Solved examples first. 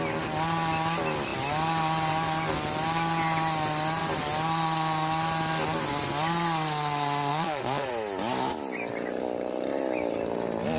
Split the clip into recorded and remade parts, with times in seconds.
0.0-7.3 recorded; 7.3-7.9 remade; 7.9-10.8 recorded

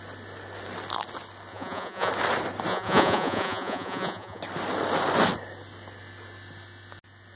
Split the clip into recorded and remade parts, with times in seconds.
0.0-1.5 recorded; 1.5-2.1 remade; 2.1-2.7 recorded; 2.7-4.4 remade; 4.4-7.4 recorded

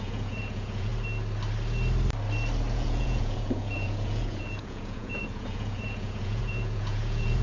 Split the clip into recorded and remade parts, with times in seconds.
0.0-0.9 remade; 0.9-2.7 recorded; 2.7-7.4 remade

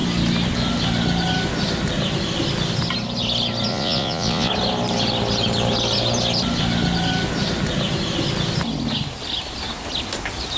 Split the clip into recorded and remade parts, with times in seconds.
0.0-3.7 recorded; 3.7-4.5 remade; 4.5-10.6 recorded